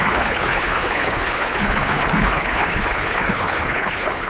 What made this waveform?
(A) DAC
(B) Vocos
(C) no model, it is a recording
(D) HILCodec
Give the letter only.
D